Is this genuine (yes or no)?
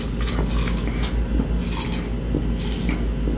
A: yes